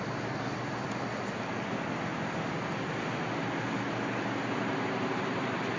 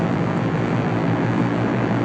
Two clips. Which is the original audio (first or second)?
first